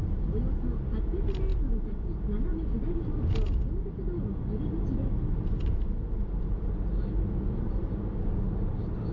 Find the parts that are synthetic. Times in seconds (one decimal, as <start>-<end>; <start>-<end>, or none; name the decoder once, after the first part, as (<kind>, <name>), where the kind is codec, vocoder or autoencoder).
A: none